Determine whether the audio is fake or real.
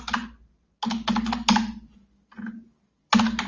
real